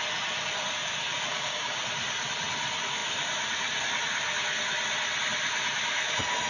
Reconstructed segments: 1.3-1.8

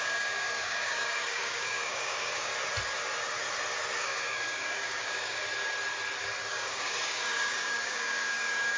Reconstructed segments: 0.0-2.5; 4.0-5.4; 6.5-8.8

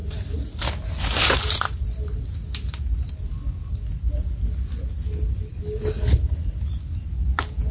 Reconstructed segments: none

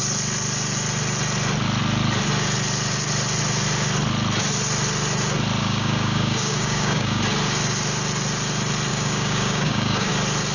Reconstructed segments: 5.6-7.2; 8.9-10.1

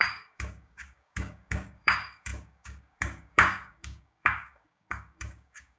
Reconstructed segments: 0.0-5.8

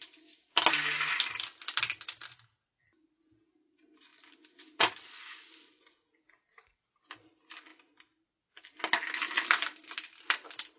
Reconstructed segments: none

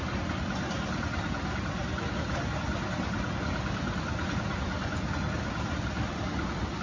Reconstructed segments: none